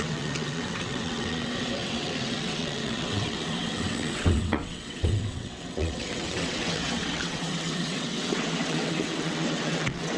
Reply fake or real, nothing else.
fake